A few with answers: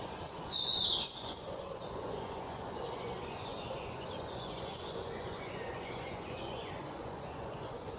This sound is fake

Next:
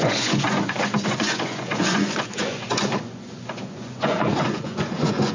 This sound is fake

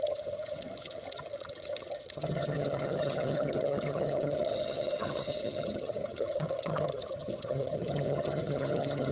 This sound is fake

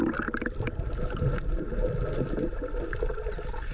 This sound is real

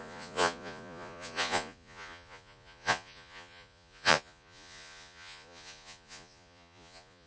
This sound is fake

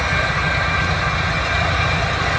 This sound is real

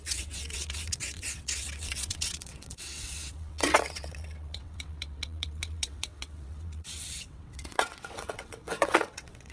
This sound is fake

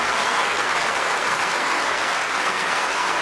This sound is fake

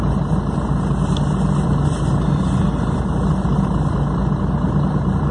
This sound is real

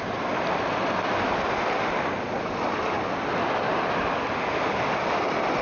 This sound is real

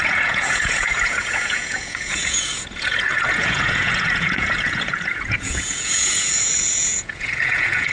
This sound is fake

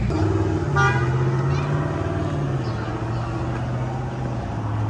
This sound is real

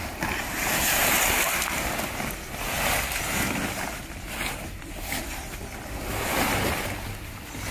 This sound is real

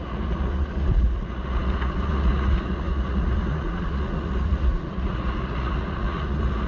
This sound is fake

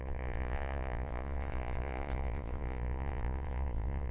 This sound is fake